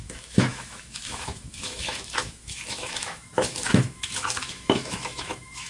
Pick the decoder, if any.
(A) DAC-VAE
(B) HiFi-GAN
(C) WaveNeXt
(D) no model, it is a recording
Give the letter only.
A